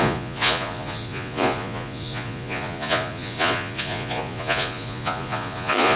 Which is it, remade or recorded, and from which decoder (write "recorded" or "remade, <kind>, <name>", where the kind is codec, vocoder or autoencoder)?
remade, vocoder, Vocos